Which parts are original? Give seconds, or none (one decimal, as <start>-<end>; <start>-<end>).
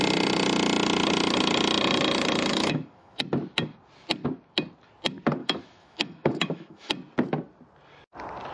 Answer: 0.0-2.5; 3.2-5.4; 6.9-8.5